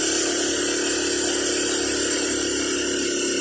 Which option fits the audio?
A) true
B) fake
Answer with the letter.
A